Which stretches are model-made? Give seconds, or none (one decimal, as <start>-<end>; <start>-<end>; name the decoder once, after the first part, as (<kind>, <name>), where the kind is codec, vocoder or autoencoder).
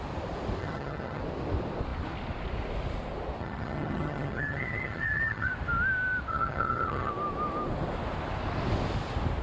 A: 0.6-1.2 (vocoder, HiFi-GAN); 3.4-5.5; 6.3-7.1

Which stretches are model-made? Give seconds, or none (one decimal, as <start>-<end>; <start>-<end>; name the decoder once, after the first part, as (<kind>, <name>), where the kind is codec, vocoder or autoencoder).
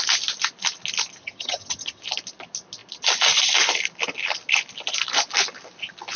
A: 1.2-2.0 (vocoder, HiFi-GAN)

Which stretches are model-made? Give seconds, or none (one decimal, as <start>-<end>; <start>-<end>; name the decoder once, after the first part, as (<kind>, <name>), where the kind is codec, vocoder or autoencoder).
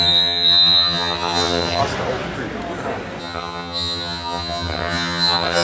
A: 0.0-1.8 (vocoder, HiFi-GAN); 3.2-5.6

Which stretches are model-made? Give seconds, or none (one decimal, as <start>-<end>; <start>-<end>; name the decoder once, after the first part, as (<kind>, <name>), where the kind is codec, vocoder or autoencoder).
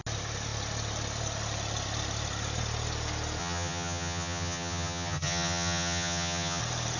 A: 3.4-6.6 (vocoder, HiFi-GAN)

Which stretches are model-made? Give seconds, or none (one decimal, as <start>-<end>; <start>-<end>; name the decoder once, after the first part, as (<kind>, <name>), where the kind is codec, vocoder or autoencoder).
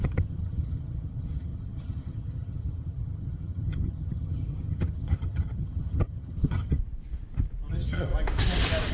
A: 0.0-6.8 (vocoder, HiFi-GAN); 7.7-8.1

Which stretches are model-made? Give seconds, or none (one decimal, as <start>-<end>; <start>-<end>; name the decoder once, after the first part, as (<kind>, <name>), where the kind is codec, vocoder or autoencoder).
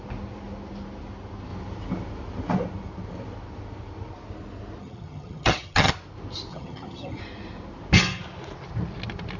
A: 4.8-5.9 (vocoder, HiFi-GAN); 6.5-7.2